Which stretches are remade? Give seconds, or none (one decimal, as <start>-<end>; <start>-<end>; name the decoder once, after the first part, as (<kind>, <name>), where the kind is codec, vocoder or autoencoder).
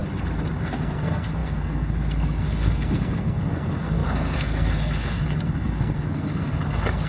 0.6-7.1 (codec, SNAC)